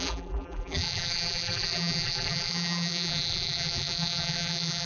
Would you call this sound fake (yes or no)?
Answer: yes